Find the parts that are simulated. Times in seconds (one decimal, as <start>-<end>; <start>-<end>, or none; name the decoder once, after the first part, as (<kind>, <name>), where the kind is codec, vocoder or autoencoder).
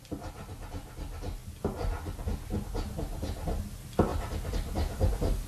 4.1-5.1 (vocoder, BigVGAN v2)